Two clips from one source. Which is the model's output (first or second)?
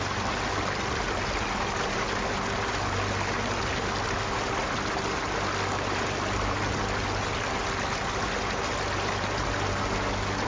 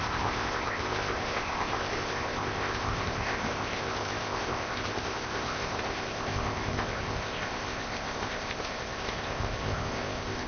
second